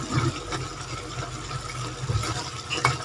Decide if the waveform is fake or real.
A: real